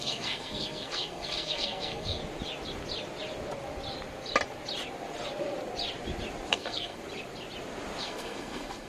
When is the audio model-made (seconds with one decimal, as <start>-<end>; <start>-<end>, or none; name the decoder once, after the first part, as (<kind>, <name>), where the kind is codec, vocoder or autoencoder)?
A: 0.0-2.2 (codec, SNAC); 6.5-7.0; 8.0-8.9

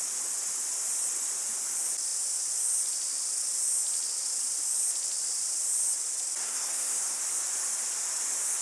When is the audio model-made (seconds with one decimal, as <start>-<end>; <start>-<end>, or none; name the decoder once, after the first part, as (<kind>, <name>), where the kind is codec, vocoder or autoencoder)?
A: 6.4-7.2 (codec, SNAC)

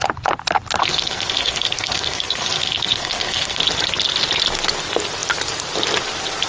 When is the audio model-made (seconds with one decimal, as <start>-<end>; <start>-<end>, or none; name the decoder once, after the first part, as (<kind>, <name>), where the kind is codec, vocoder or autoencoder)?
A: 0.8-3.6 (codec, SNAC)

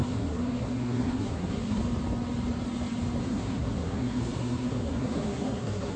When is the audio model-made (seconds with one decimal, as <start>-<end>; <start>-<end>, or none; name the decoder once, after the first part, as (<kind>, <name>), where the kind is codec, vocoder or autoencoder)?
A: 0.0-1.8 (codec, SNAC); 3.2-6.0